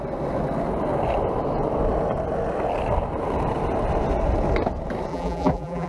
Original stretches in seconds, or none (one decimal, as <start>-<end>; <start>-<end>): 0.0-5.1